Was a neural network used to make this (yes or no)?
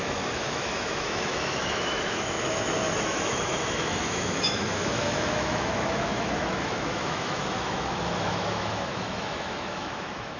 yes